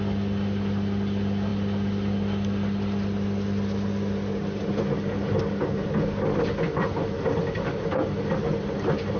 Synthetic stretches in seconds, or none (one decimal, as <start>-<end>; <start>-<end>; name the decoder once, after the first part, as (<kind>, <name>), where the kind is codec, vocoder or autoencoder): none